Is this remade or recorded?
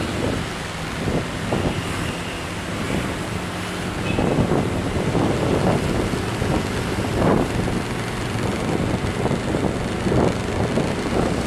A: recorded